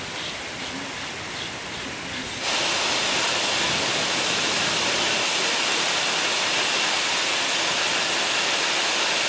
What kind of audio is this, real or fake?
real